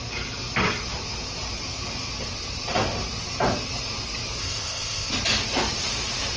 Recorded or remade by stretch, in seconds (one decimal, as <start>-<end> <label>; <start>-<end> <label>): 0.0-4.4 recorded; 4.4-5.1 remade; 5.1-6.4 recorded